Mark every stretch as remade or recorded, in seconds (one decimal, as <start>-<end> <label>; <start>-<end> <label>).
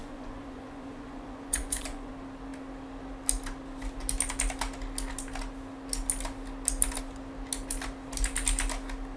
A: 0.0-2.1 remade; 2.1-9.2 recorded